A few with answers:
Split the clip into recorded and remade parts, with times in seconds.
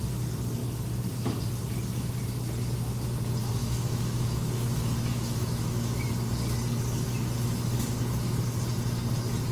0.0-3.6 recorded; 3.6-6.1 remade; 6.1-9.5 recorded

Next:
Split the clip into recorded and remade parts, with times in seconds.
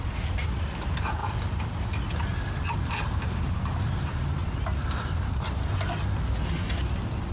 0.0-7.3 remade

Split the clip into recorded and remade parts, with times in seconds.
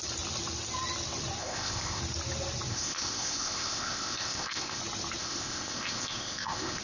0.0-1.4 recorded; 1.4-2.0 remade; 2.0-2.7 recorded; 2.7-4.8 remade; 4.8-5.2 recorded; 5.2-6.8 remade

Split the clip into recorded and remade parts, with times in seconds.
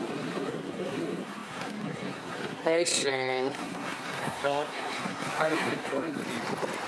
0.0-6.2 remade; 6.2-6.9 recorded